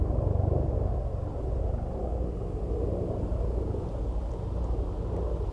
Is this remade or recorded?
recorded